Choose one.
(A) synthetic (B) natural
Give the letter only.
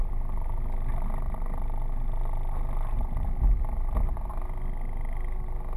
B